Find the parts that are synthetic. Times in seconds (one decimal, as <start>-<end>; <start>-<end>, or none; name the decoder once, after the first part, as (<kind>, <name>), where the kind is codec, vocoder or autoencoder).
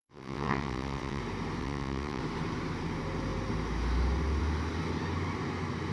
0.0-1.2 (vocoder, WaveNeXt); 1.6-2.2